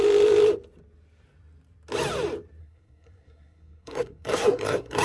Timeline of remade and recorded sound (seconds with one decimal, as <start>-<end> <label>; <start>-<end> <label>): 0.0-2.6 recorded; 2.6-5.0 remade